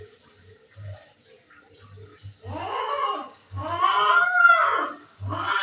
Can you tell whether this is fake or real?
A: real